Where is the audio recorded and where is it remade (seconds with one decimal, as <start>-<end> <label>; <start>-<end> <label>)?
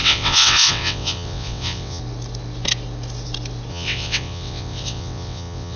0.0-2.0 remade; 2.0-3.7 recorded; 3.7-5.8 remade